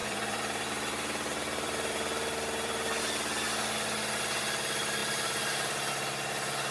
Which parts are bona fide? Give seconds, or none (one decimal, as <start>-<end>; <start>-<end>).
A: 3.0-5.0; 5.9-6.7